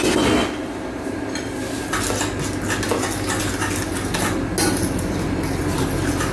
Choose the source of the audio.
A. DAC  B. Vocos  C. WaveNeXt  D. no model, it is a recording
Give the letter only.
D